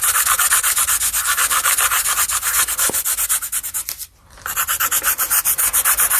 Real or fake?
real